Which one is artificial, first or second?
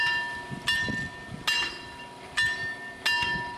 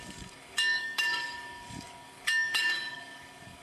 second